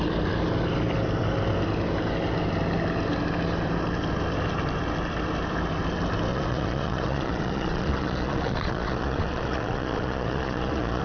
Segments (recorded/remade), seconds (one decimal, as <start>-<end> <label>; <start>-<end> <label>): 0.0-6.3 recorded; 6.3-11.0 remade